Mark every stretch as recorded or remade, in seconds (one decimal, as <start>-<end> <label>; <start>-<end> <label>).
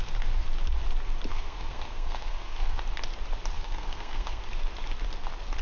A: 0.0-1.3 recorded; 1.3-2.8 remade; 2.8-3.5 recorded; 3.5-4.4 remade; 4.4-5.6 recorded